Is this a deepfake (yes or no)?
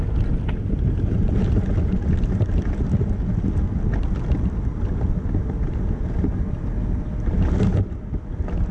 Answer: no